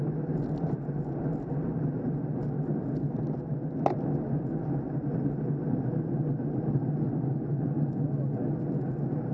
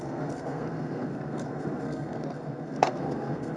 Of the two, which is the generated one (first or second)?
second